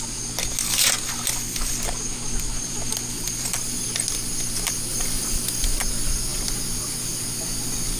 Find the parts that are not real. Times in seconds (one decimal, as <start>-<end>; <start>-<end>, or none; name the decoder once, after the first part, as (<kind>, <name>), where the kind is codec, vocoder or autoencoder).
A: 4.9-5.7 (vocoder, BigVGAN v2)